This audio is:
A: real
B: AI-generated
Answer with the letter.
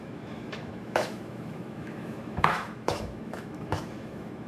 B